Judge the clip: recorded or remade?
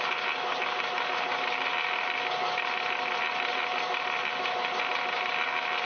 recorded